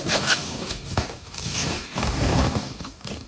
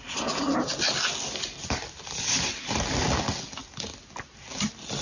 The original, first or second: second